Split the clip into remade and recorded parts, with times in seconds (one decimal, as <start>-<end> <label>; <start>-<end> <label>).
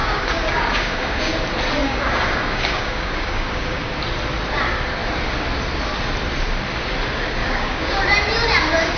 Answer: 0.0-1.2 remade; 1.2-1.8 recorded; 1.8-3.9 remade; 3.9-7.4 recorded; 7.4-8.0 remade; 8.0-9.0 recorded